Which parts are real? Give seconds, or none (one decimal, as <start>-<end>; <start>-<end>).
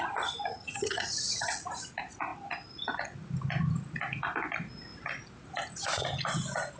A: 0.0-0.5; 1.5-6.8